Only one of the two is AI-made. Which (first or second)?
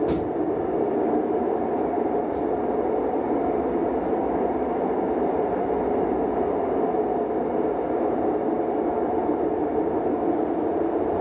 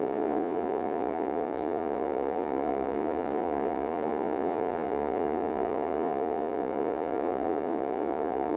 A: second